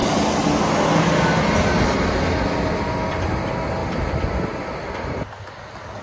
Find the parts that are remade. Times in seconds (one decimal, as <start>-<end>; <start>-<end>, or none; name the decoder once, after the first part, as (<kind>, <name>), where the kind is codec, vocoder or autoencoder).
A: none